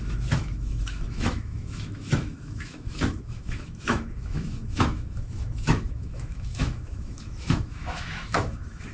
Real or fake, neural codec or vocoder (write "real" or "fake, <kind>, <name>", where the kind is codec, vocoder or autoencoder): fake, autoencoder, DAC-VAE